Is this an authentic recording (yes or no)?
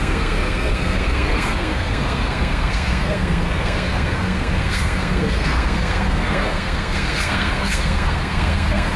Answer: no